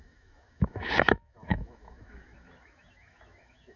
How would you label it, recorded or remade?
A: remade